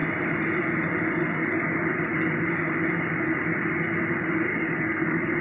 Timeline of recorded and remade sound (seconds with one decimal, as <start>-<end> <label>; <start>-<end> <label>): 0.0-4.5 recorded; 4.5-5.4 remade